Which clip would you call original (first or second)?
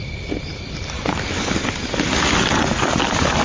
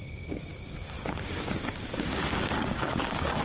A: first